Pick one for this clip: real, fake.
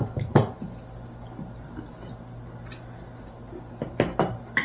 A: real